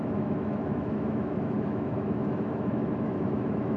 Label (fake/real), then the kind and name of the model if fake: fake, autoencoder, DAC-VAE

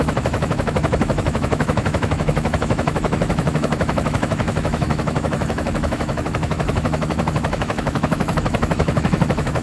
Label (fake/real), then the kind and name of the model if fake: fake, autoencoder, DAC-VAE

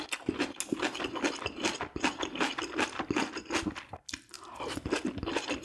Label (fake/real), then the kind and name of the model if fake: real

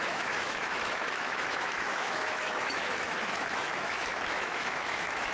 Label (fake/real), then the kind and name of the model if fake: fake, autoencoder, DAC-VAE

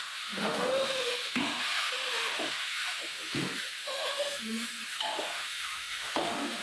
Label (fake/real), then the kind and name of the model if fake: fake, autoencoder, DAC-VAE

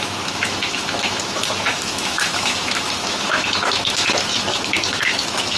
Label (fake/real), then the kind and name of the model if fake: fake, autoencoder, DAC-VAE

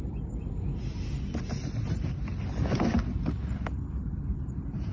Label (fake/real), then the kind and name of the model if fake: real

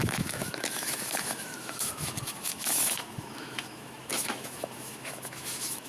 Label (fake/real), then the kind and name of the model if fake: fake, autoencoder, DAC-VAE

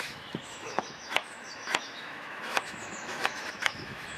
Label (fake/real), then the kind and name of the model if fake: fake, autoencoder, DAC-VAE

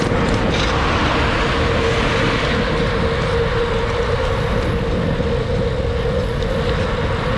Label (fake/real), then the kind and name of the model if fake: real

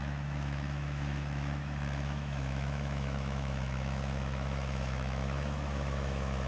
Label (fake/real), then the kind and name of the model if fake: fake, autoencoder, DAC-VAE